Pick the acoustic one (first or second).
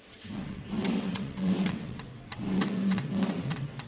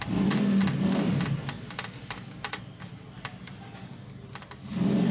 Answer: second